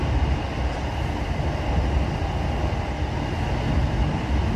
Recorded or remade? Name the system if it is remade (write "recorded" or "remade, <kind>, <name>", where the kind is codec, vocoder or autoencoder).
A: recorded